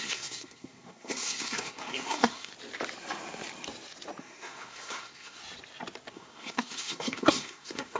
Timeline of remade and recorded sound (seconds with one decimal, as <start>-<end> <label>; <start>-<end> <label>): 0.0-2.5 remade; 2.5-4.2 recorded; 4.2-5.4 remade; 5.4-6.1 recorded; 6.1-8.0 remade